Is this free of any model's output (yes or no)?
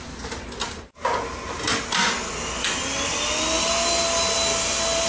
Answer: yes